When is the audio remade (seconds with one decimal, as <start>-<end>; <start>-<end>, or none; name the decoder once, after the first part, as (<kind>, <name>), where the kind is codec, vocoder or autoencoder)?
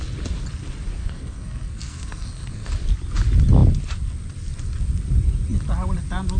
1.0-2.7 (codec, SNAC)